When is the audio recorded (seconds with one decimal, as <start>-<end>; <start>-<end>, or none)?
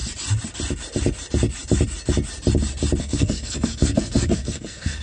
0.0-3.0